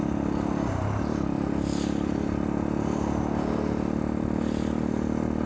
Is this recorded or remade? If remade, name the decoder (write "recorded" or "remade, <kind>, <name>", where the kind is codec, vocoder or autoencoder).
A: recorded